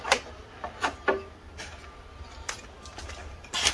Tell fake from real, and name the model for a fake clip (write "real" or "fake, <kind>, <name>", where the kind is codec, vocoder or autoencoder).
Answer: real